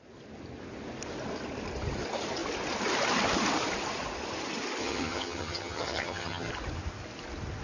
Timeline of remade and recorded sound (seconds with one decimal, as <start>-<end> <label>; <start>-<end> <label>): 0.0-4.8 recorded; 4.8-6.5 remade; 6.5-7.6 recorded